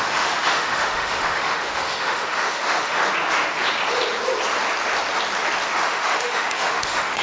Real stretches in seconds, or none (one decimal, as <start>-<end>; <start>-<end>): 3.0-5.8